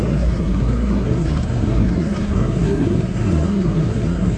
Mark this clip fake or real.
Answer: fake